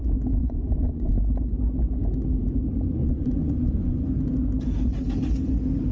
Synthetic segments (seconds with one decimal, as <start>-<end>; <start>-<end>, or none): 0.4-1.1; 3.0-4.1